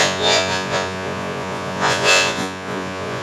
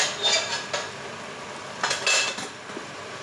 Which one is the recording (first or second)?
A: second